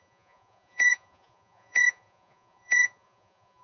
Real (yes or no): no